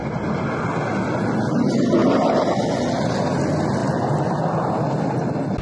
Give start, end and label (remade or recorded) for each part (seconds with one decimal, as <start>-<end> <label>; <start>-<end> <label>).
0.0-5.6 recorded